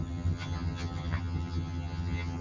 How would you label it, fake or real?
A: fake